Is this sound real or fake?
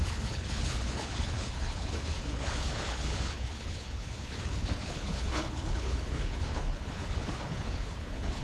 fake